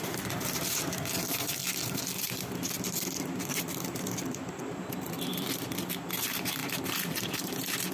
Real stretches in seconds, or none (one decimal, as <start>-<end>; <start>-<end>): 0.0-6.6; 7.4-7.9